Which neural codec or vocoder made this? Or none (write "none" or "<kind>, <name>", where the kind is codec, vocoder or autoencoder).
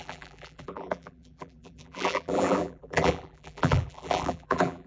vocoder, BigVGAN v2